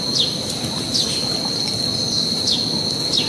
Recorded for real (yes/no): yes